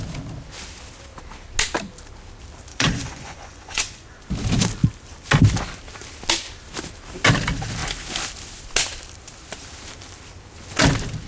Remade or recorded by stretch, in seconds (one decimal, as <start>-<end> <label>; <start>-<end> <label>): 0.0-2.7 recorded; 2.7-4.2 remade; 4.2-11.3 recorded